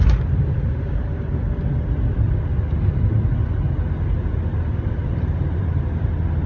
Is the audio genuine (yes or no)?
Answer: yes